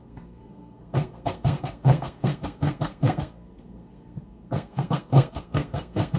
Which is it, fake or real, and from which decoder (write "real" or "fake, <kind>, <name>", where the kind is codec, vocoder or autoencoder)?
fake, codec, SNAC